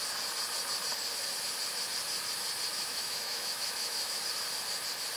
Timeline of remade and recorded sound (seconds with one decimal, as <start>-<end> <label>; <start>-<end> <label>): 0.0-2.7 recorded; 2.7-4.2 remade; 4.2-5.2 recorded